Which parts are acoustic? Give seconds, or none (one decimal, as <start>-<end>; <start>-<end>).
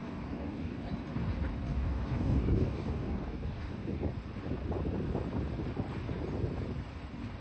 0.9-1.7; 4.1-7.4